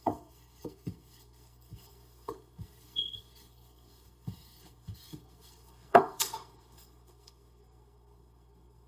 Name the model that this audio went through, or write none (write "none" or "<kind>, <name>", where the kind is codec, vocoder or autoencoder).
codec, SNAC